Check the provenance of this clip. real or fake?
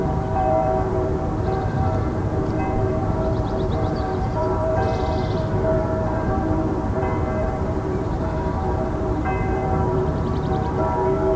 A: fake